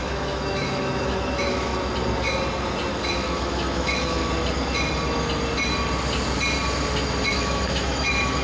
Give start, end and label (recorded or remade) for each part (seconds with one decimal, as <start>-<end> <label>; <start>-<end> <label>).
0.0-1.7 remade; 1.7-2.9 recorded; 2.9-4.2 remade; 4.2-7.3 recorded; 7.3-8.4 remade